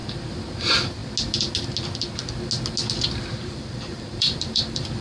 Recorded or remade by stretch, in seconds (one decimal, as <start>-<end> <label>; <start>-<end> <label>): 0.0-0.6 recorded; 0.6-1.0 remade; 1.0-3.3 recorded; 3.3-5.0 remade